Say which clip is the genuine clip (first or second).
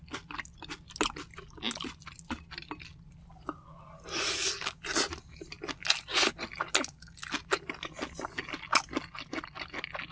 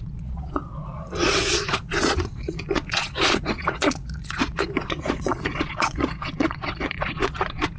first